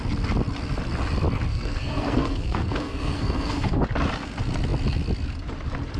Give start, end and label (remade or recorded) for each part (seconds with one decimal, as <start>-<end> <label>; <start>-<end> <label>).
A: 0.0-1.5 recorded; 1.5-3.8 remade; 3.8-6.0 recorded